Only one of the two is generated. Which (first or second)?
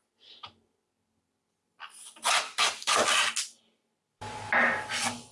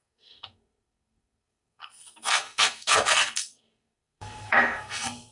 second